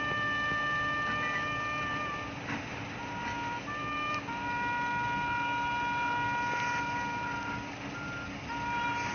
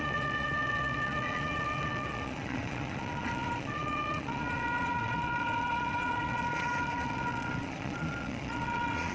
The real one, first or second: first